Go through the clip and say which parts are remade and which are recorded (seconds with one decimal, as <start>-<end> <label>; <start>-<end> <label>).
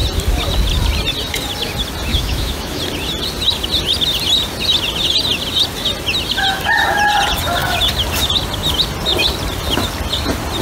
0.0-2.1 recorded; 2.1-2.8 remade; 2.8-10.6 recorded